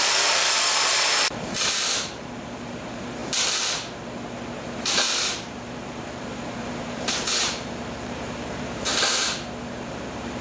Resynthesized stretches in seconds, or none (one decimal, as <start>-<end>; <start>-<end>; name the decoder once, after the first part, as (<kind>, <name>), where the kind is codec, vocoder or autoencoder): 0.0-3.2 (vocoder, BigVGAN v2); 4.6-8.9; 9.6-10.4